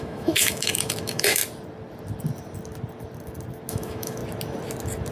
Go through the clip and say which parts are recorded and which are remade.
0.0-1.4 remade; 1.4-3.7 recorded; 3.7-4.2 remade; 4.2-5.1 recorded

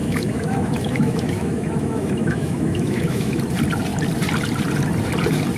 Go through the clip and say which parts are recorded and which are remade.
0.0-3.4 remade; 3.4-5.6 recorded

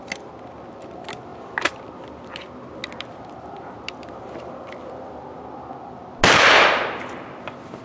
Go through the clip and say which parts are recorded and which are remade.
0.0-7.8 recorded

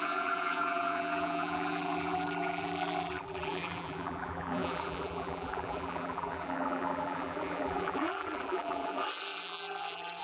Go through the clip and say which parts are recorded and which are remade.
0.0-10.2 remade